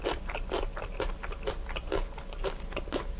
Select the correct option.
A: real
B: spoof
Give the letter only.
A